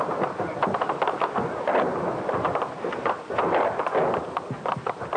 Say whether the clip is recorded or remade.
recorded